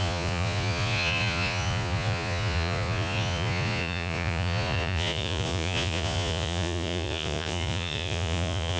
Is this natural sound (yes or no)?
no